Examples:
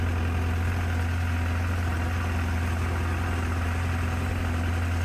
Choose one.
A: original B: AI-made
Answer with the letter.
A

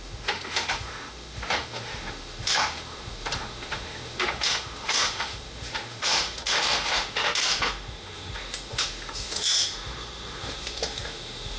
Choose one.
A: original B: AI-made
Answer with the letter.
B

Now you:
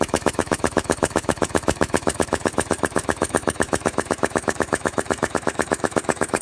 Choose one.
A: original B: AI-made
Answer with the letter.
B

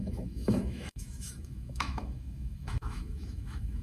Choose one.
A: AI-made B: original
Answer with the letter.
A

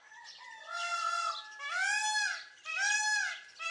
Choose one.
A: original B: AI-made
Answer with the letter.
A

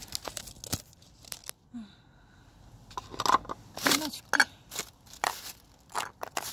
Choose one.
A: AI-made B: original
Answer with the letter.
B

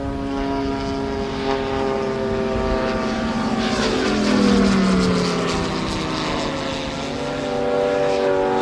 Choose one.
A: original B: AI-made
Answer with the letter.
A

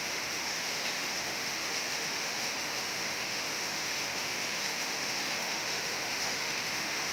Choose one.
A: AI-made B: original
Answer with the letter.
A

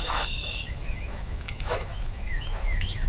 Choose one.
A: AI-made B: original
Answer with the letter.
A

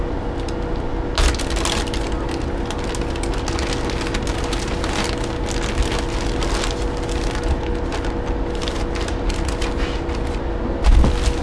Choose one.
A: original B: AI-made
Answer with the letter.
A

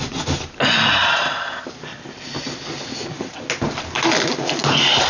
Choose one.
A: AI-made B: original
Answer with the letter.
B